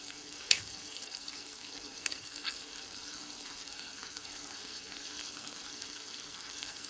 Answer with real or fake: fake